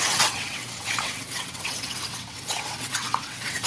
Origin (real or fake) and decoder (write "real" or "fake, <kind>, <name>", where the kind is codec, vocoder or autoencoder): fake, vocoder, WaveNeXt